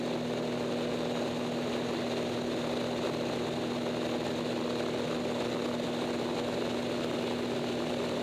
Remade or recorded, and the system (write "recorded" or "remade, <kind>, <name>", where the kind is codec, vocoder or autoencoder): recorded